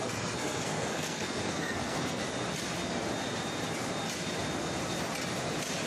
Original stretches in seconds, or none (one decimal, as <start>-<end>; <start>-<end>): 2.2-5.9